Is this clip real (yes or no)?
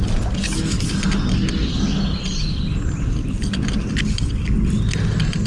yes